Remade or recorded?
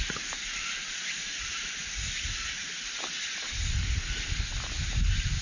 recorded